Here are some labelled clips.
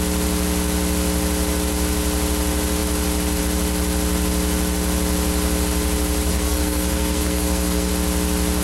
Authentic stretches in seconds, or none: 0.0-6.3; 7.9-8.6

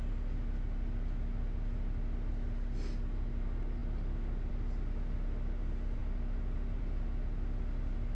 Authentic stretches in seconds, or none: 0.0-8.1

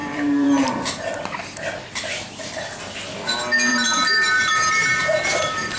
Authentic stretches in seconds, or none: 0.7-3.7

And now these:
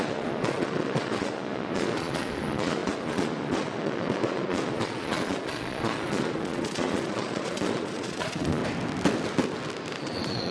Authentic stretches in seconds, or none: 8.6-10.0